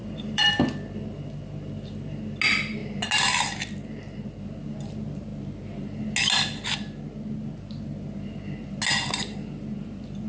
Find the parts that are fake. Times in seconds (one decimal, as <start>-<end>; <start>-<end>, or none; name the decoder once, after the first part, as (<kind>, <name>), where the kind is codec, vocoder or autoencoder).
0.0-0.5 (vocoder, BigVGAN v2)